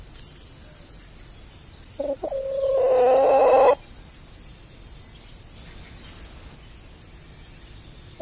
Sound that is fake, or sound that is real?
real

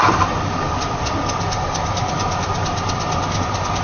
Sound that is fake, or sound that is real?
real